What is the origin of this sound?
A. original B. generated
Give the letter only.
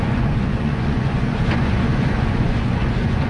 B